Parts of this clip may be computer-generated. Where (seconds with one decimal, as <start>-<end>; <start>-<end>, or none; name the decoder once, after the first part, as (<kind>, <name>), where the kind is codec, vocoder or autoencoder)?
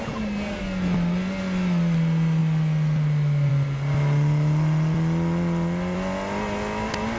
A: 0.0-0.6 (vocoder, BigVGAN v2)